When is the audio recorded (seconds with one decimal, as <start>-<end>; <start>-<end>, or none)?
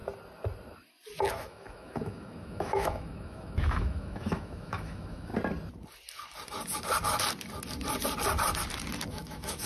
0.0-1.3; 5.3-9.1